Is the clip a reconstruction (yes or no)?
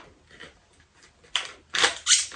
no